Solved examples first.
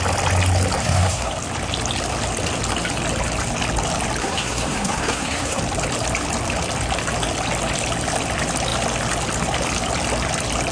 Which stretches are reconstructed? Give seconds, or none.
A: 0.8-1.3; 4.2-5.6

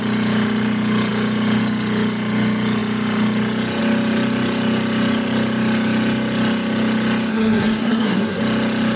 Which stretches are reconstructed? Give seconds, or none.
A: 7.3-8.4

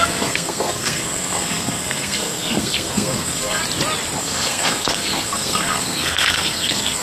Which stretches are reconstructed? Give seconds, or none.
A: 0.0-3.6; 4.2-7.0

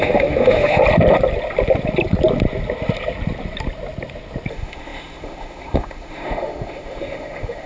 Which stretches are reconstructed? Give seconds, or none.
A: 0.0-0.8; 4.5-7.7

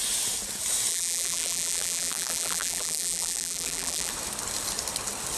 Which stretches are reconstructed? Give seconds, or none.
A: 0.9-4.1

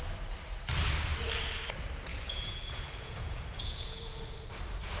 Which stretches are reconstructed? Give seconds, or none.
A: 2.1-4.2